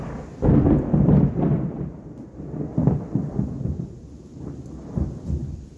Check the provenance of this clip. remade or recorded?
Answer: recorded